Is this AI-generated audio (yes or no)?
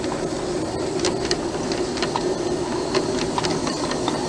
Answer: no